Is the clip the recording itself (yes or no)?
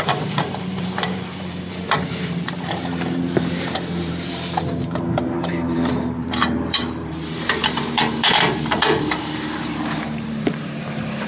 no